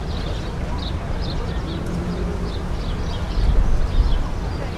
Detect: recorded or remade recorded